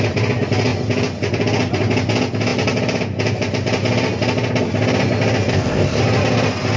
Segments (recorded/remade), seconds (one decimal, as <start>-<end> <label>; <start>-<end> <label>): 0.0-5.5 recorded; 5.5-6.0 remade; 6.0-6.8 recorded